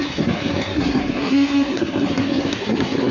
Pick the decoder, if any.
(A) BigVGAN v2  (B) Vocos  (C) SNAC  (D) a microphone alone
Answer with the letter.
C